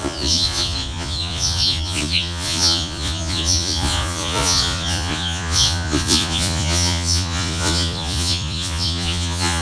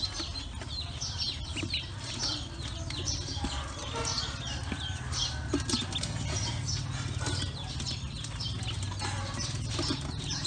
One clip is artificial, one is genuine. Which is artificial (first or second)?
first